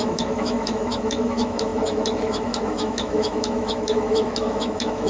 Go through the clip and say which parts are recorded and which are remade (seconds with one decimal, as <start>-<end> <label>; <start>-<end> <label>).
0.0-5.1 remade